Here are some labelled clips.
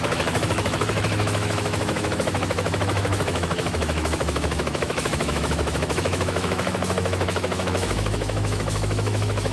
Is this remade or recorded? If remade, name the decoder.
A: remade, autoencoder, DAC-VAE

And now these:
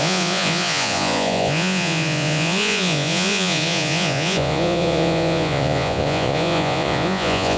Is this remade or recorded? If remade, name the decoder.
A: remade, vocoder, Vocos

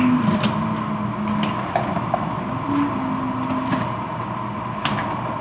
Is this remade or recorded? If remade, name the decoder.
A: recorded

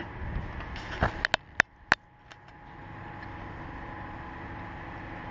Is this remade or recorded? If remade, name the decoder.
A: recorded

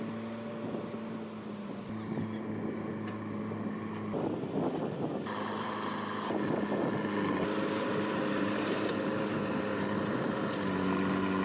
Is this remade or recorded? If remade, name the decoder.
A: recorded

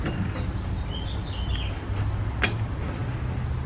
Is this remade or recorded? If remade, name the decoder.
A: recorded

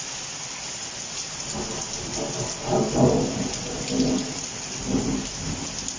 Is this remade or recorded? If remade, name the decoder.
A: recorded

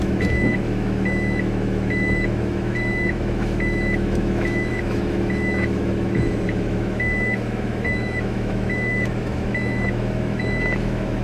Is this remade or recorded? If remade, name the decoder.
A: remade, autoencoder, DAC-VAE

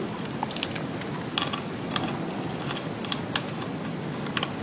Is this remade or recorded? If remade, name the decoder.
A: recorded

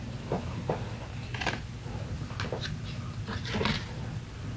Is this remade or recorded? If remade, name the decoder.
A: recorded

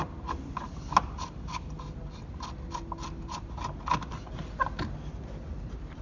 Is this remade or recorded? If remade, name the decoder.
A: recorded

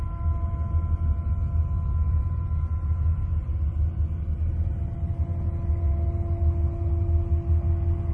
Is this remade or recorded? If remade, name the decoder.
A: recorded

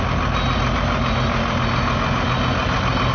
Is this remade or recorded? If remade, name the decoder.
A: recorded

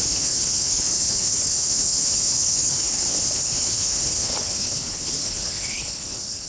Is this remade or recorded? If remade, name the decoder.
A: remade, codec, HILCodec